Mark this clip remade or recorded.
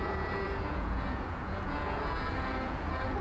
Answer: remade